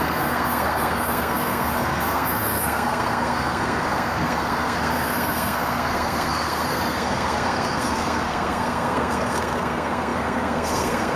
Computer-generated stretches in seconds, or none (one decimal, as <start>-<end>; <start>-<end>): 0.0-11.2

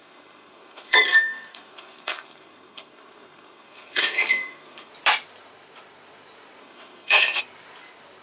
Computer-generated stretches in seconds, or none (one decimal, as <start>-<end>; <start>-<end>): 0.0-4.9; 6.6-7.4